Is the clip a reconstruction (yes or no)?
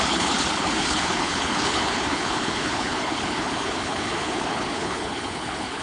yes